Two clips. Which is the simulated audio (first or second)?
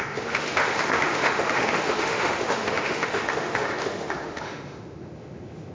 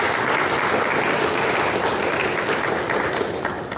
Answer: first